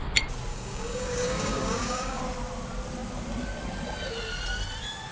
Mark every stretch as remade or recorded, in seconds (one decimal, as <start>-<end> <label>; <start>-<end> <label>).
0.0-0.5 recorded; 0.5-2.2 remade; 2.2-5.1 recorded